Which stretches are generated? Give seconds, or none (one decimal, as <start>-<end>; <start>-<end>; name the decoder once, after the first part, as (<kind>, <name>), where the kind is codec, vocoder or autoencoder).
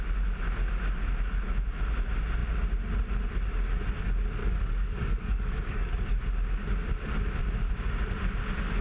4.4-6.2 (codec, DAC)